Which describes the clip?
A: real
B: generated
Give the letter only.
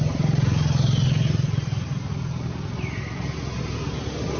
A